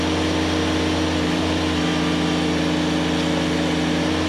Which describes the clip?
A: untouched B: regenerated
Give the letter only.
A